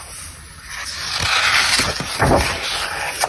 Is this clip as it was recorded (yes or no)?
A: yes